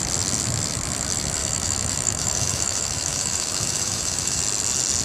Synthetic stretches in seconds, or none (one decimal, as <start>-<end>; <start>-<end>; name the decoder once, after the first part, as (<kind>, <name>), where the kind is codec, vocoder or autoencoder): 1.4-4.4 (autoencoder, DAC-VAE)